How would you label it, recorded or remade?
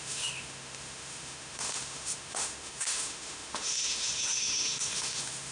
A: remade